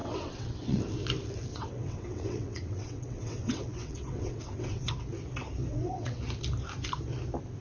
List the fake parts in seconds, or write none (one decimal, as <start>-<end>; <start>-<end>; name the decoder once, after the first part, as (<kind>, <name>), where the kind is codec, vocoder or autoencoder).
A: 0.0-0.8 (vocoder, WaveNeXt); 1.5-4.9; 5.7-6.2